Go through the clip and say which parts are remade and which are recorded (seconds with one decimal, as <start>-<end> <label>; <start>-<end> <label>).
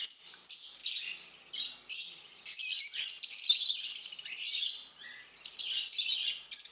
0.0-6.7 recorded